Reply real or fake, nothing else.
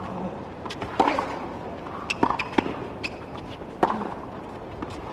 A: fake